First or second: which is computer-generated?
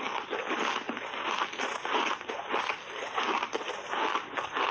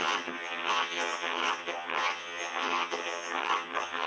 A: second